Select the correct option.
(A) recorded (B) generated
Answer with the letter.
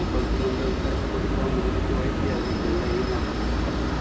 A